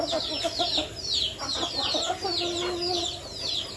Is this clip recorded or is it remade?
recorded